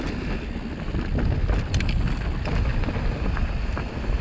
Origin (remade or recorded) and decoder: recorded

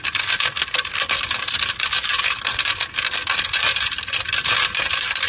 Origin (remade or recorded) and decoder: recorded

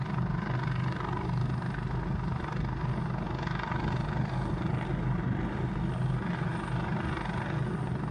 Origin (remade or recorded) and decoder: recorded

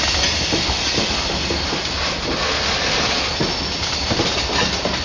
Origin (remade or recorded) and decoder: recorded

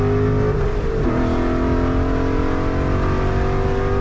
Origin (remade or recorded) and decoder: recorded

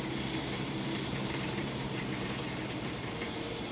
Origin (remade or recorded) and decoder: remade, vocoder, BigVGAN v2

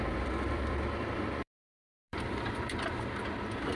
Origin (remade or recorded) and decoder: remade, vocoder, BigVGAN v2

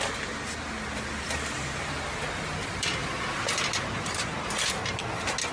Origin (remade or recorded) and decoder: recorded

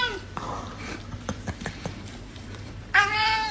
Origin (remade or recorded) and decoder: remade, vocoder, BigVGAN v2